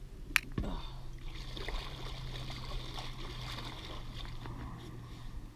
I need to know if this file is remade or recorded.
recorded